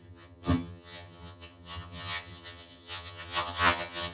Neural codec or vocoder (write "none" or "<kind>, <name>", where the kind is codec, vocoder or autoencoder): vocoder, HiFi-GAN